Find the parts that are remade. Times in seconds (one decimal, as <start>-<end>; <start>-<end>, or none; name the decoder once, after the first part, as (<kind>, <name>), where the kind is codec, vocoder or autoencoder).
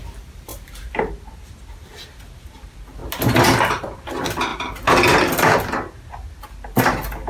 none